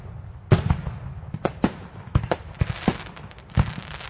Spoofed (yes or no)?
no